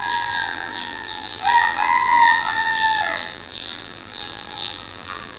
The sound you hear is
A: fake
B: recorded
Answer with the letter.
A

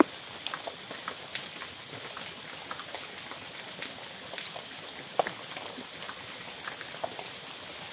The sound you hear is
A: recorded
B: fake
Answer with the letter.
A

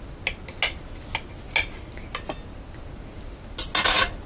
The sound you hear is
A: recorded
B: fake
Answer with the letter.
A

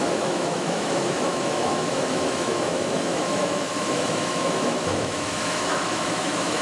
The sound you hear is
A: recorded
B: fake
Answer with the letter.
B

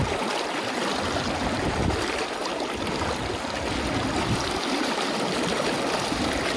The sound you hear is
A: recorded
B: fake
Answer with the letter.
A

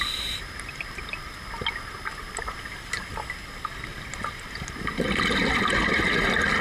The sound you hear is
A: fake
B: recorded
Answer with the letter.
B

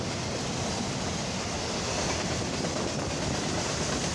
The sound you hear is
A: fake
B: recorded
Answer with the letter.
A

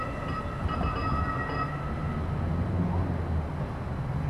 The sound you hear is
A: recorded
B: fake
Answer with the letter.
A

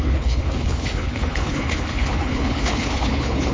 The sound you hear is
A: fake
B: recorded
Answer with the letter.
A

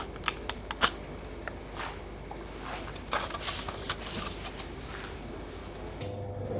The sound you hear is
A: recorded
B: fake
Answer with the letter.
A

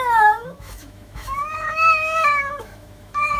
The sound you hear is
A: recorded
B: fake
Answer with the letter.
B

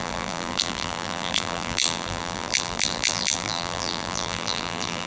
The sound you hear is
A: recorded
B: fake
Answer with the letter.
B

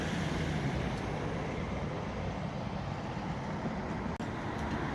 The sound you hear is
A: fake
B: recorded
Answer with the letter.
B